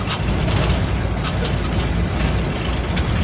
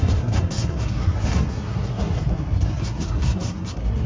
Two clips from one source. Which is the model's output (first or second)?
second